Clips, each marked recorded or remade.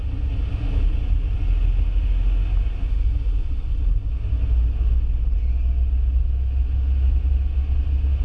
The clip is recorded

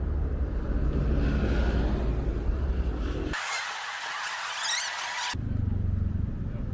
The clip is recorded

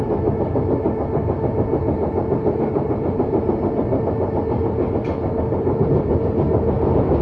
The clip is recorded